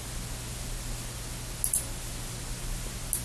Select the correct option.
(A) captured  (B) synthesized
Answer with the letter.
A